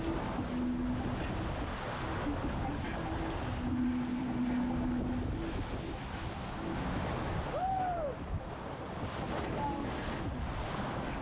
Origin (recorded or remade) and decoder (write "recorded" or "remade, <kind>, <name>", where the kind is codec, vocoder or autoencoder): recorded